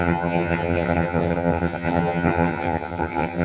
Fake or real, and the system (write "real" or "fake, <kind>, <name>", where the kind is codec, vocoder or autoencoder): fake, vocoder, HiFi-GAN